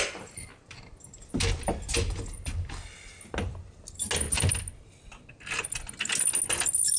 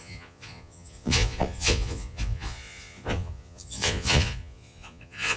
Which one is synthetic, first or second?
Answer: second